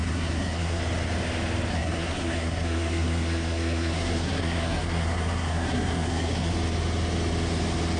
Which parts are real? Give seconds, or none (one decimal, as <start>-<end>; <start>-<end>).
0.8-1.7; 6.5-8.0